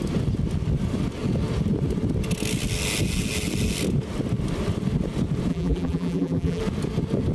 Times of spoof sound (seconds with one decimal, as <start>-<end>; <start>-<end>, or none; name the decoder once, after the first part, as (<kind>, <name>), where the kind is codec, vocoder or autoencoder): 5.5-6.6 (vocoder, BigVGAN v2)